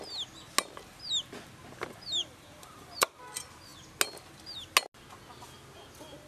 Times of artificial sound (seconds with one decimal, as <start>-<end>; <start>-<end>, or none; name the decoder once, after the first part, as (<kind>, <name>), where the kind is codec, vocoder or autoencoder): 2.2-3.2 (vocoder, BigVGAN v2)